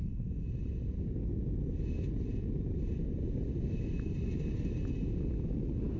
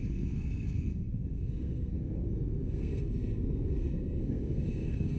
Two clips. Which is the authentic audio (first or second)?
first